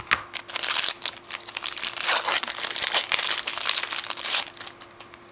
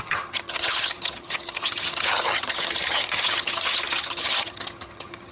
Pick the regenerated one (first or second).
second